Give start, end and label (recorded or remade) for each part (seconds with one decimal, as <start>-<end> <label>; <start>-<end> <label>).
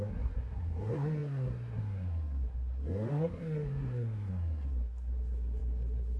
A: 0.0-6.2 remade